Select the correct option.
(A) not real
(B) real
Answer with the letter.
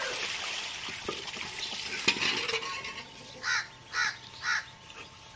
B